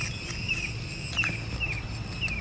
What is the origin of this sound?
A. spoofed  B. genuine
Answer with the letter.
B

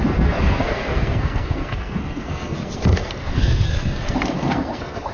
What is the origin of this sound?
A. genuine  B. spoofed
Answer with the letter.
B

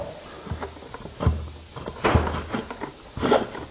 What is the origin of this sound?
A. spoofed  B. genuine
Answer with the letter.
B